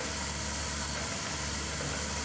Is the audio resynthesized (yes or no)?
no